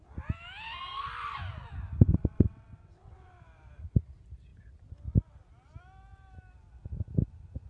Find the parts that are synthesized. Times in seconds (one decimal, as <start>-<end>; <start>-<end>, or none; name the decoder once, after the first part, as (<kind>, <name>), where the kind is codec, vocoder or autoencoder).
2.1-3.3 (vocoder, WaveNeXt)

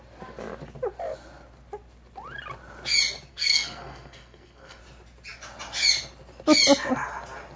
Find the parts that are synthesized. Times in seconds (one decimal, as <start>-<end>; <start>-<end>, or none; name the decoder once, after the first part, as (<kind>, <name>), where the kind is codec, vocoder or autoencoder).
3.3-4.8 (codec, SNAC)

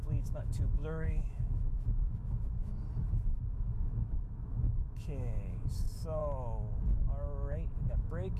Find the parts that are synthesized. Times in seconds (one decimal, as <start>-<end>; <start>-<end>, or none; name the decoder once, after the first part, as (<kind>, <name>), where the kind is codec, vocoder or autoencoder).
0.0-2.6 (autoencoder, DAC-VAE); 3.3-6.2; 7.9-8.4

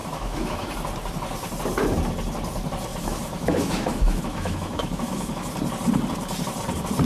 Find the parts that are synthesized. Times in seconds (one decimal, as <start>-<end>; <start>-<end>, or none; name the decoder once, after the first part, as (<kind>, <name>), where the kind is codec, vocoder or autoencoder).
0.0-0.7 (autoencoder, DAC-VAE); 2.9-5.5